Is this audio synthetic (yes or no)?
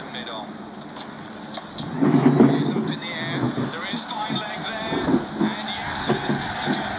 no